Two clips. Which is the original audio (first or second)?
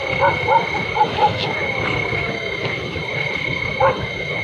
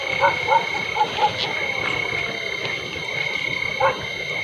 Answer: second